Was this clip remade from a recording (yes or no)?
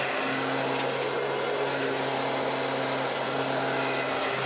no